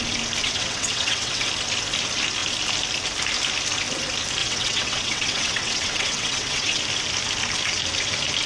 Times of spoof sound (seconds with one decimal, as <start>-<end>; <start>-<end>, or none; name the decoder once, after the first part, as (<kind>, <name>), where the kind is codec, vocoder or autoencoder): 0.4-1.5 (vocoder, WaveNeXt); 4.4-6.8

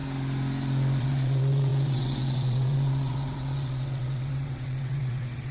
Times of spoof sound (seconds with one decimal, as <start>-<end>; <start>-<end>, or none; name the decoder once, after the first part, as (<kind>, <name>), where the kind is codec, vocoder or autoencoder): 1.0-5.5 (vocoder, WaveNeXt)